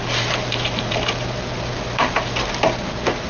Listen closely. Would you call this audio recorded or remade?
remade